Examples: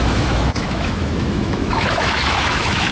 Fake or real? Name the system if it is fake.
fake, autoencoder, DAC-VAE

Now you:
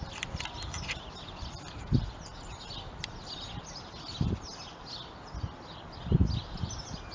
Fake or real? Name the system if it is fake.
real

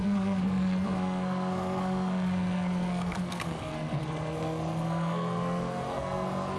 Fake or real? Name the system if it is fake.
fake, codec, SNAC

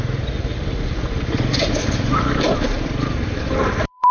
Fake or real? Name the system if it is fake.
fake, vocoder, BigVGAN v2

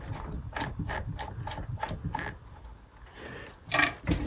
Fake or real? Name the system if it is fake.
real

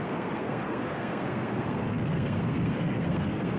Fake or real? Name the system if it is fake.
fake, codec, SNAC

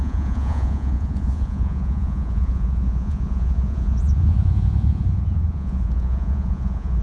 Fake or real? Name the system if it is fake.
fake, vocoder, Vocos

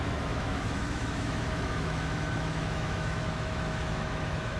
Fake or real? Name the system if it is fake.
fake, autoencoder, DAC-VAE